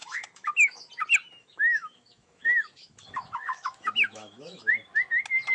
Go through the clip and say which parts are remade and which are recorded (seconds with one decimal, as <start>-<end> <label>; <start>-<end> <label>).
0.0-0.9 remade; 0.9-1.4 recorded; 1.4-4.7 remade; 4.7-5.5 recorded